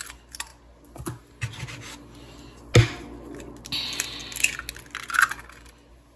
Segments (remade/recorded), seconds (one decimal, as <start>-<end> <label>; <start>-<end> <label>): 0.0-6.2 recorded